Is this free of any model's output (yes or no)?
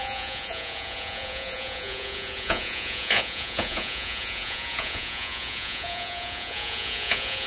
no